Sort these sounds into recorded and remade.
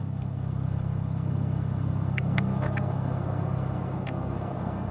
remade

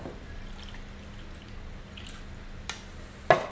recorded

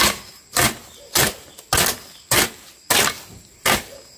recorded